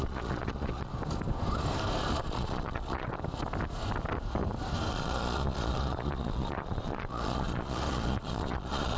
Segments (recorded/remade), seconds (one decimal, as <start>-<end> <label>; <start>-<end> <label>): 0.0-0.9 remade; 0.9-2.2 recorded; 2.2-3.1 remade; 3.1-4.9 recorded; 4.9-9.0 remade